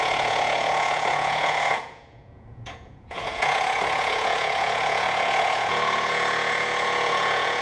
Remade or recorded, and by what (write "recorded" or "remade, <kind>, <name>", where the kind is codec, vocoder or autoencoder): remade, vocoder, Vocos